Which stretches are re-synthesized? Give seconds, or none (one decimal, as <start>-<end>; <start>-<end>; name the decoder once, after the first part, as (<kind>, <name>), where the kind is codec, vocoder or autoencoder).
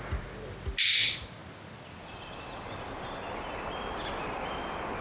none